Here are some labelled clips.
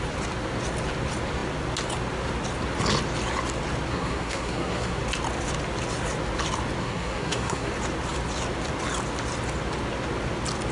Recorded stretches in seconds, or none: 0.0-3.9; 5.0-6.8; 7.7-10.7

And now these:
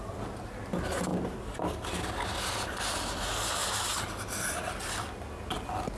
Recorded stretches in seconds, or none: 0.0-6.0